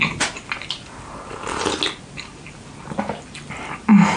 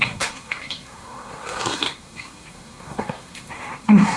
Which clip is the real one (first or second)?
first